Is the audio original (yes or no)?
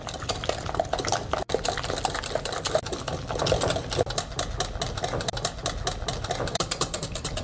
yes